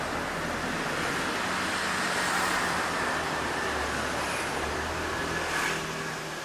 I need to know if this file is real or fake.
real